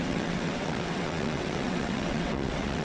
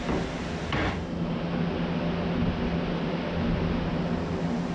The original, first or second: second